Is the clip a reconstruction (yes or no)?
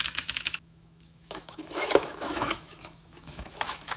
yes